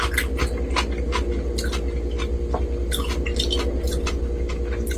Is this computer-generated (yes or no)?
no